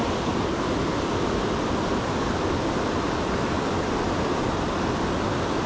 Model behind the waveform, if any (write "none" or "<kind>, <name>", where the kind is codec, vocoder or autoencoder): none